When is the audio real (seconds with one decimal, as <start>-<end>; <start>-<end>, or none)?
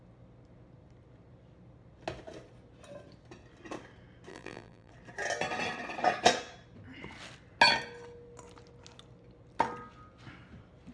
0.0-4.3; 4.9-10.9